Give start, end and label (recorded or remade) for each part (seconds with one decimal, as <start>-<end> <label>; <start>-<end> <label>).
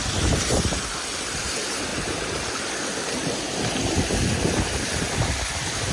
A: 0.0-5.9 recorded